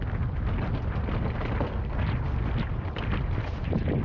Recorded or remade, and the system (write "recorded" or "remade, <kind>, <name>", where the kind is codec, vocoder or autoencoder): recorded